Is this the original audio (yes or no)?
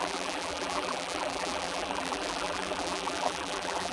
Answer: no